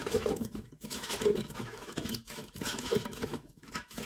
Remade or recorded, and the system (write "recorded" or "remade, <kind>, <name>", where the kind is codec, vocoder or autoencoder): remade, autoencoder, DAC-VAE